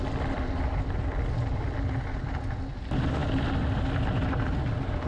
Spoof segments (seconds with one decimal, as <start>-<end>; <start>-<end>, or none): none